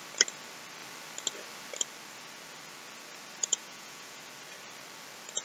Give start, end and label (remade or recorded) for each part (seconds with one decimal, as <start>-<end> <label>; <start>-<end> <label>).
0.0-3.4 recorded; 3.4-4.2 remade; 4.2-5.4 recorded